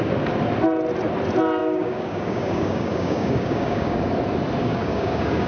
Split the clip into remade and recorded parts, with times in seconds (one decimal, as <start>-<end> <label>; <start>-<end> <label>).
0.0-1.6 recorded; 1.6-4.0 remade; 4.0-4.6 recorded; 4.6-5.5 remade